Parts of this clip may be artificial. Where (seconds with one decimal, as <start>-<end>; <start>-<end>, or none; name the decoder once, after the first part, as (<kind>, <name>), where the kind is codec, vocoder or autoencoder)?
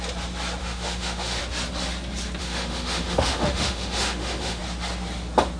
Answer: 0.6-1.4 (autoencoder, DAC-VAE); 2.4-4.6